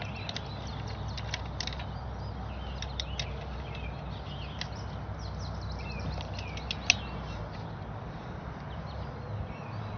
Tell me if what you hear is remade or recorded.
recorded